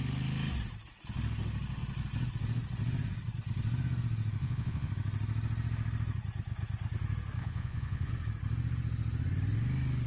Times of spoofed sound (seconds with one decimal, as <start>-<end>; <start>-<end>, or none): 4.4-4.9; 7.4-8.1